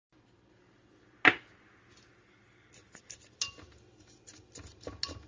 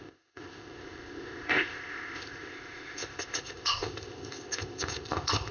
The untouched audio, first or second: first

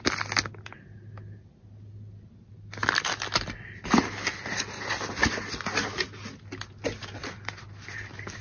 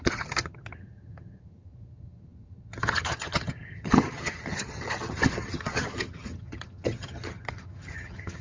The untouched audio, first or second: first